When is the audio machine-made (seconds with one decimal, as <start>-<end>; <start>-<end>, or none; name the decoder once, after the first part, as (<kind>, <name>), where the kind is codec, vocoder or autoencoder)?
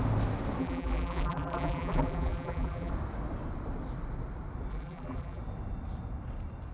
0.6-2.9 (vocoder, BigVGAN v2); 4.7-5.4